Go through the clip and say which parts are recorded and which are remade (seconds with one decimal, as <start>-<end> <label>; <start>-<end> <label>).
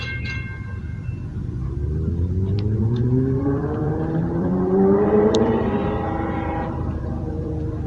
0.0-2.8 recorded; 2.8-7.5 remade; 7.5-7.9 recorded